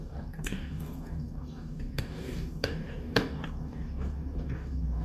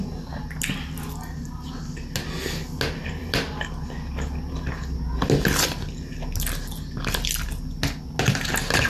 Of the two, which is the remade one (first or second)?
first